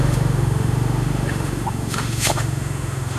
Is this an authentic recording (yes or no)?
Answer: no